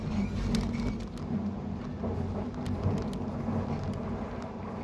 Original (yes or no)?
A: yes